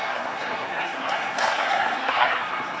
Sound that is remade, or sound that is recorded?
remade